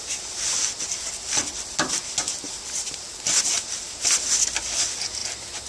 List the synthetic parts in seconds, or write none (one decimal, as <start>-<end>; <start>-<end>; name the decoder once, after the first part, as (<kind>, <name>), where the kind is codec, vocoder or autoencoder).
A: none